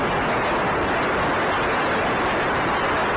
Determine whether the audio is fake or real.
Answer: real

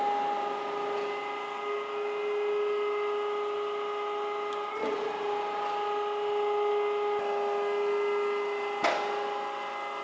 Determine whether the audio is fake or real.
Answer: real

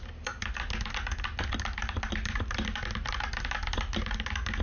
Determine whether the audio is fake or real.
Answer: real